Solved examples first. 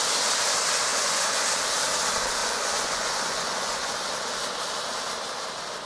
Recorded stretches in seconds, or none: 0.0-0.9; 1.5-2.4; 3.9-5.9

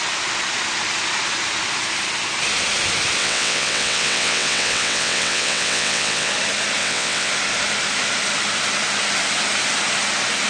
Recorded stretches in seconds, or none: 0.0-3.2; 6.3-6.8; 7.3-10.5

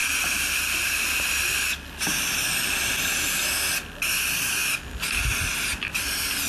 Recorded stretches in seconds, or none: 1.3-2.1; 2.8-6.5

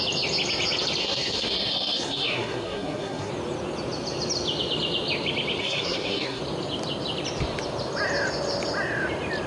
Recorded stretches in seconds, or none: 0.0-1.0; 3.3-5.6; 6.4-9.5

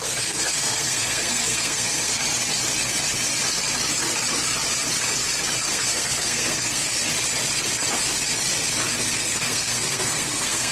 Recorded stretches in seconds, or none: 2.2-5.7; 7.0-9.1